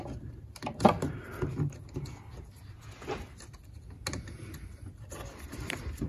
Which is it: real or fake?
real